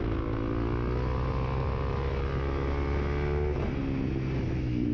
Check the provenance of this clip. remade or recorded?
recorded